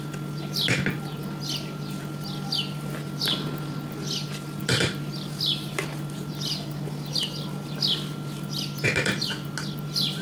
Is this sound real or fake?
real